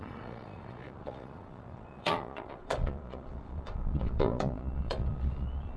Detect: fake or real fake